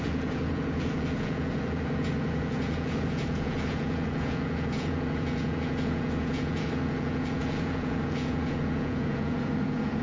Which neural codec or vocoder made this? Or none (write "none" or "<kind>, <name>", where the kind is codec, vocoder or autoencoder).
vocoder, Vocos